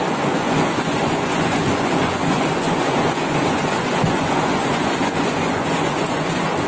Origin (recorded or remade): remade